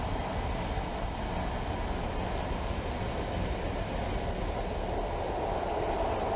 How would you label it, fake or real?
real